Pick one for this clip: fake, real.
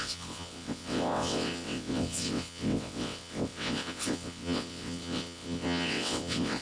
fake